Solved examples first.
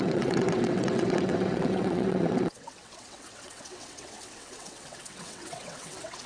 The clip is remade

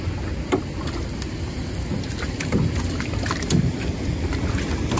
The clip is recorded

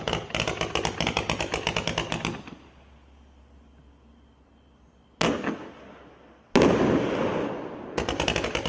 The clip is recorded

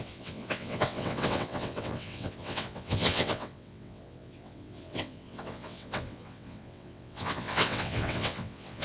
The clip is remade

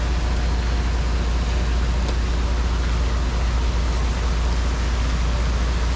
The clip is recorded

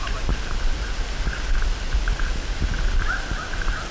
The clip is recorded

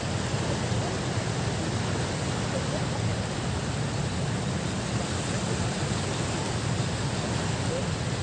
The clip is recorded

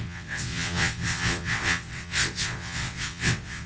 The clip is remade